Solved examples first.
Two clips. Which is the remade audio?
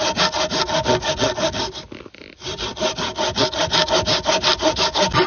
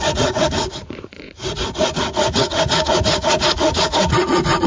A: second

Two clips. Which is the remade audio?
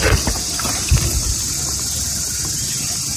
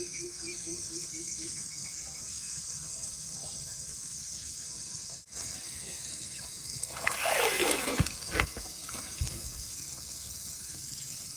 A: second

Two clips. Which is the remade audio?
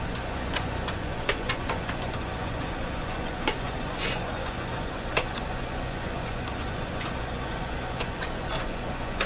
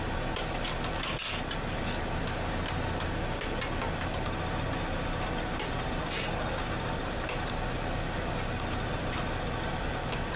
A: first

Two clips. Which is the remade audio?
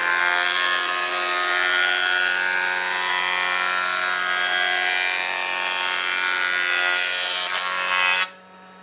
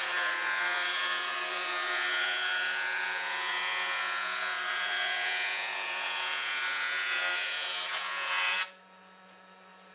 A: second